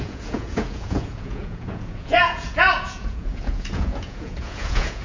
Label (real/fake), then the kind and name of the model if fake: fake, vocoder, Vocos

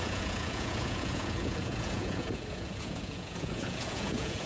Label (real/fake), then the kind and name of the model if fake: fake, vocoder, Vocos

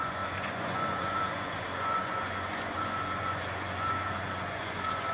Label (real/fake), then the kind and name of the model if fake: fake, vocoder, Vocos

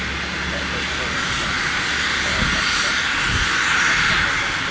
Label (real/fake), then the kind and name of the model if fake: real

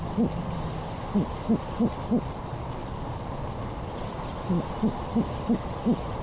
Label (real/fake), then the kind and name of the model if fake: real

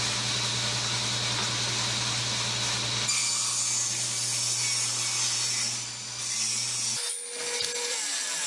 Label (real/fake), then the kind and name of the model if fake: real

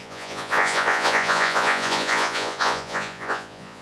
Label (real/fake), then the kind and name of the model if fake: fake, vocoder, Vocos